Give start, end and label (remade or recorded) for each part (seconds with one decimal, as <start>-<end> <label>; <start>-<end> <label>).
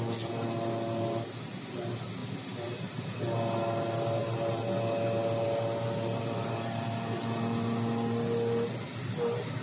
0.0-9.6 recorded